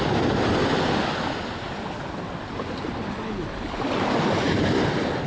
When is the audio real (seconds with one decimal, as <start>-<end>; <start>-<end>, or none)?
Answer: 0.0-5.3